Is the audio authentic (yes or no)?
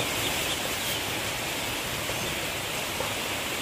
yes